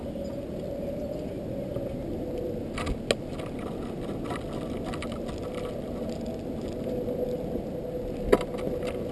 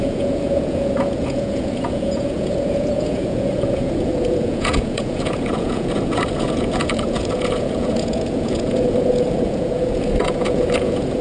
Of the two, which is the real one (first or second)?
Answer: first